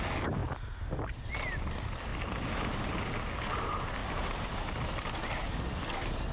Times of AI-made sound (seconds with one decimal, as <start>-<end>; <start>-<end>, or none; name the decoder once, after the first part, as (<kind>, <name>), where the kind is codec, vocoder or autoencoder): 0.4-1.3 (vocoder, BigVGAN v2); 2.1-2.9; 4.0-4.5